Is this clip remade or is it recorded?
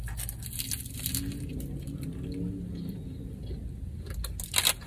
recorded